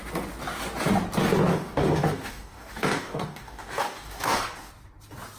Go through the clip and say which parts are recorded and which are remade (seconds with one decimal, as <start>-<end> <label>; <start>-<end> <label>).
0.0-1.5 recorded; 1.5-4.7 remade; 4.7-5.4 recorded